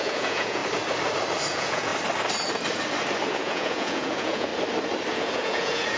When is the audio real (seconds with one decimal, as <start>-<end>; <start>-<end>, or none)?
0.6-1.5; 1.9-3.3; 4.5-5.1